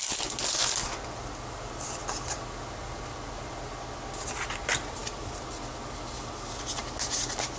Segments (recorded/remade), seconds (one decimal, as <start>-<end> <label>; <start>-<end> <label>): 0.0-7.6 recorded